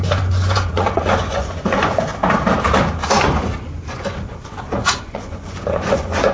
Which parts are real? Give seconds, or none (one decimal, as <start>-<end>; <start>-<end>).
2.2-3.9